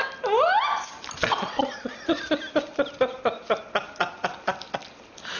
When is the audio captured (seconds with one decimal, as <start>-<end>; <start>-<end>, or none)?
0.0-1.2; 2.2-5.4